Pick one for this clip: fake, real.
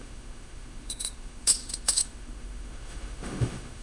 fake